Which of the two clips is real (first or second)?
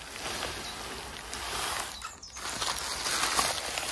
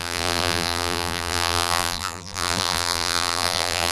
first